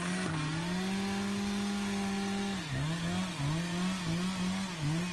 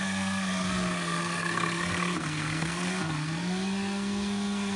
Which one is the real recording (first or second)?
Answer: first